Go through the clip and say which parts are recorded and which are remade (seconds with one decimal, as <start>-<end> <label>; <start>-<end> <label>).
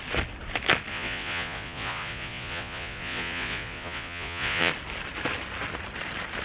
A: 0.0-0.9 recorded; 0.9-4.7 remade; 4.7-6.4 recorded